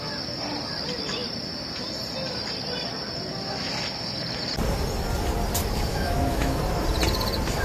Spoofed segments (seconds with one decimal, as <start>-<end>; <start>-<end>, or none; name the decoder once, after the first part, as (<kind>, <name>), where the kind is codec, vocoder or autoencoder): 5.9-6.6 (autoencoder, DAC-VAE)